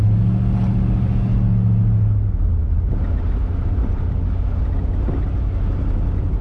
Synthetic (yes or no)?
no